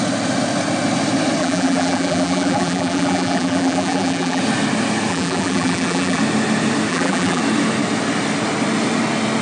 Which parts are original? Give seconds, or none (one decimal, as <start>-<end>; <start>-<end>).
0.0-1.4; 4.4-5.1; 6.2-6.9; 7.4-9.4